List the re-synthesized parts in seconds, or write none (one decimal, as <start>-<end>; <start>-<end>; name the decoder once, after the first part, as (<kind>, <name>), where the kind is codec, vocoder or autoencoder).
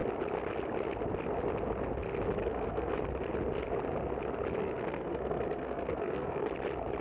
2.4-2.9 (codec, SNAC); 4.6-6.5